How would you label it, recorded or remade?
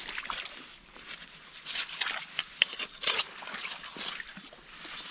recorded